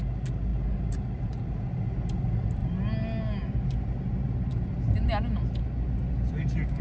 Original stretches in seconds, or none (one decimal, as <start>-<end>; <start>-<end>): 0.0-6.8